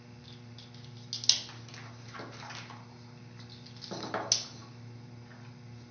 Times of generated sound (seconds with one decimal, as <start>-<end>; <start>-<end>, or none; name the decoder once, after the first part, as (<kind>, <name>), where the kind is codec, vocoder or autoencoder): none